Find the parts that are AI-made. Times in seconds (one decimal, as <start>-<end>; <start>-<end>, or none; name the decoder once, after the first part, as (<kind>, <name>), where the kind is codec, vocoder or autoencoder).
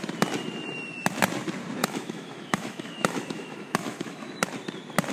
1.8-4.3 (autoencoder, DAC-VAE)